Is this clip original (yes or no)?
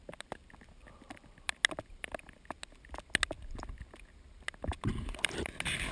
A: yes